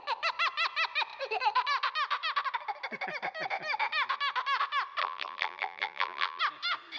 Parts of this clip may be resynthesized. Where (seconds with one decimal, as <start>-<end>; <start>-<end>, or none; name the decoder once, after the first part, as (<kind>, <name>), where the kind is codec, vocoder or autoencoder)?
5.0-6.4 (vocoder, BigVGAN v2)

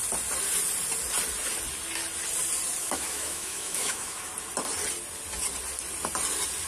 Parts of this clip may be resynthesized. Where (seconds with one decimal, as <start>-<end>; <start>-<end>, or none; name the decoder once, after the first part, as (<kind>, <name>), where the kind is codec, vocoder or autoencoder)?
2.8-4.3 (autoencoder, DAC-VAE)

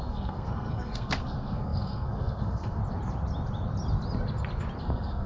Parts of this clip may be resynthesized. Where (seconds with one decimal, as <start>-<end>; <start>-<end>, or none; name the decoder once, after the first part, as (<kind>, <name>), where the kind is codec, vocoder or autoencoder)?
0.0-2.8 (codec, SNAC); 4.8-5.3

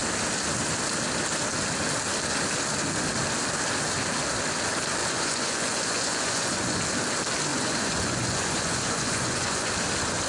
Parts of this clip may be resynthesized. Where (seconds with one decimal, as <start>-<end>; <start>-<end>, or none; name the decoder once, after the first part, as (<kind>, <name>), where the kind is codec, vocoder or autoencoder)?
5.0-6.8 (vocoder, Vocos); 7.5-9.7